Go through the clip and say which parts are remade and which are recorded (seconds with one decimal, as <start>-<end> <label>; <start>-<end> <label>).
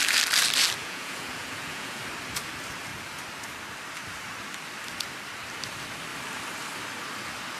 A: 0.0-0.8 recorded; 0.8-2.0 remade; 2.0-7.6 recorded